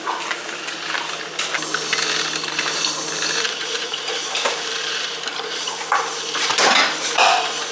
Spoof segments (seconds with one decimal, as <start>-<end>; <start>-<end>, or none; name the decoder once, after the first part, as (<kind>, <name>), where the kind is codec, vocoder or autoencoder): 2.4-6.5 (vocoder, BigVGAN v2)